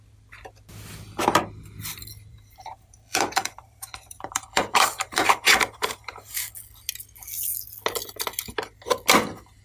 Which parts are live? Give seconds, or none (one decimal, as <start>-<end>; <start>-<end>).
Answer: 0.0-2.3; 6.2-9.6